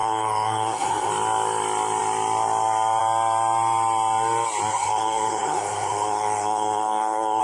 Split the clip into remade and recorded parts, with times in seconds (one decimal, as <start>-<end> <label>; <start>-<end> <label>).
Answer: 0.0-1.1 remade; 1.1-4.7 recorded; 4.7-7.4 remade